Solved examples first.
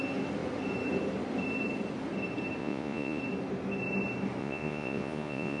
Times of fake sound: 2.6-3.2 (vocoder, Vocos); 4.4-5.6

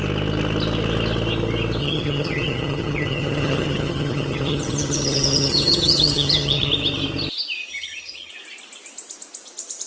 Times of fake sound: 1.8-6.7 (vocoder, HiFi-GAN); 7.7-8.3

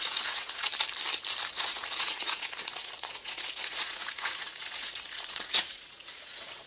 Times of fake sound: 0.0-0.7 (vocoder, Vocos); 1.5-6.7

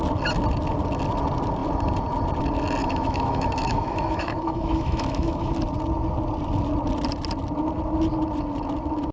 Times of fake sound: 2.8-5.5 (autoencoder, DAC-VAE)

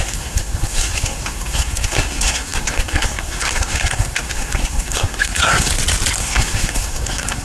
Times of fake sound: 0.0-5.7 (codec, SNAC); 6.2-7.4